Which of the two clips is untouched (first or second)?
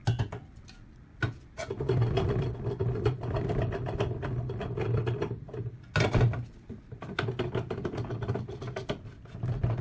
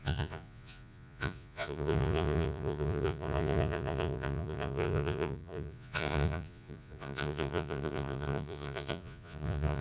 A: first